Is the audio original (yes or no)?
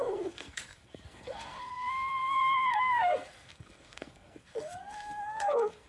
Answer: no